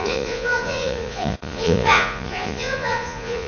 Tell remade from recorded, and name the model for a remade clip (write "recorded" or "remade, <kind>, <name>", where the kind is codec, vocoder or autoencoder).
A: remade, vocoder, Vocos